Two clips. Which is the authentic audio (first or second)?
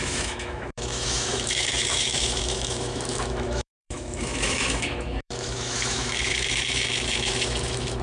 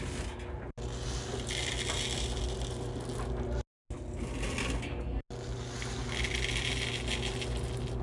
second